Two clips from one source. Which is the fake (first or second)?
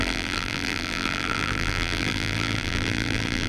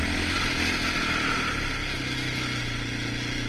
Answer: first